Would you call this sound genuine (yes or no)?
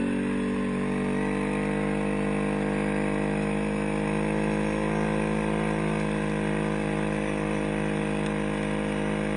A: yes